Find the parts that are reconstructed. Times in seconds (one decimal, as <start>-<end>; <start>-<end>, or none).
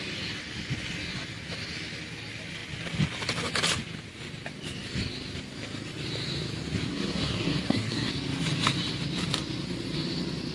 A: 6.9-8.1